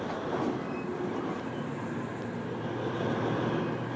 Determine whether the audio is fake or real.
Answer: real